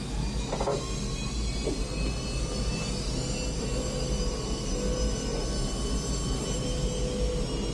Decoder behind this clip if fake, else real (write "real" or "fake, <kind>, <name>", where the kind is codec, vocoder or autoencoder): real